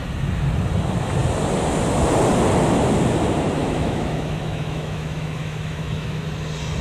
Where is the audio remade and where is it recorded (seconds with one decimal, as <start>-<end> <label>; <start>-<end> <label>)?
0.0-3.6 recorded; 3.6-6.2 remade; 6.2-6.8 recorded